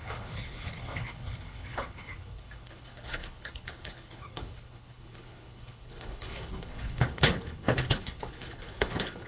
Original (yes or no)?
no